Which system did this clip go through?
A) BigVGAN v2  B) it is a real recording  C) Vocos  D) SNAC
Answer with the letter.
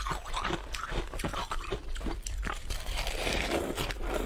A